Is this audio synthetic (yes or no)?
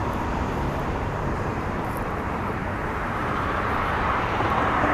yes